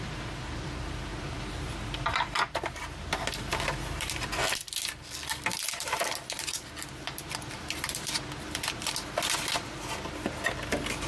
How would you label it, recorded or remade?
remade